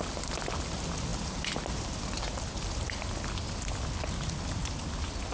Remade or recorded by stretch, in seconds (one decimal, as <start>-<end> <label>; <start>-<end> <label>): 0.0-5.3 recorded